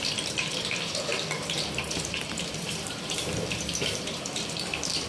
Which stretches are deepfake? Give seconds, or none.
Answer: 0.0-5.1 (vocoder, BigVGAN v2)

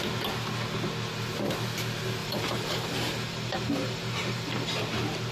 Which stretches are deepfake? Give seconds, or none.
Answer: 2.2-4.8 (vocoder, BigVGAN v2)

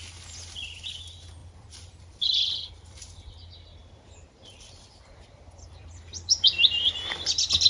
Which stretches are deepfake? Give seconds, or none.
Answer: 1.4-2.7 (vocoder, BigVGAN v2); 3.8-6.6

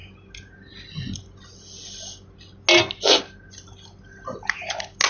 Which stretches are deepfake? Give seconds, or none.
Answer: none